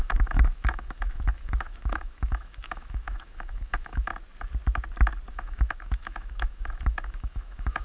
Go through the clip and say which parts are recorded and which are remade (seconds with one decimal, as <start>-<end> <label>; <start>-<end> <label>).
0.0-4.1 remade; 4.1-5.3 recorded; 5.3-7.8 remade